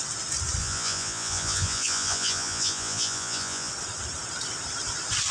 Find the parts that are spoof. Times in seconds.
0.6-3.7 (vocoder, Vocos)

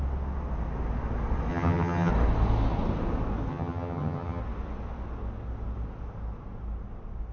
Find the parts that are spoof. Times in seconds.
1.5-2.1 (vocoder, HiFi-GAN); 3.5-4.4

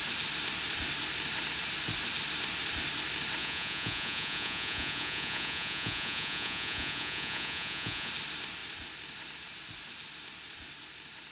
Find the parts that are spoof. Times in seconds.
3.4-8.1 (vocoder, Vocos)

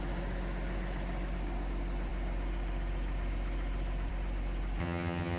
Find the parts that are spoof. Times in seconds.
4.8-5.4 (vocoder, HiFi-GAN)

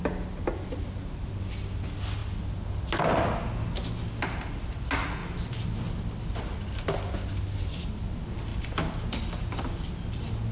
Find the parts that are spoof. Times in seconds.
5.2-6.4 (vocoder, BigVGAN v2); 8.5-9.1

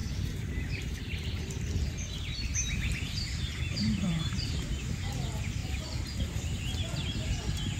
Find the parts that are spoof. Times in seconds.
3.7-4.7 (vocoder, BigVGAN v2); 5.6-6.4